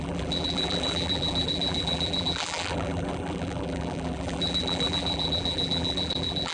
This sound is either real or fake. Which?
fake